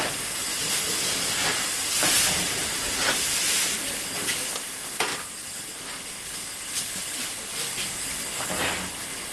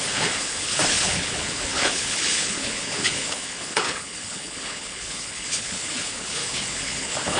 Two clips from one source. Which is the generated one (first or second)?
second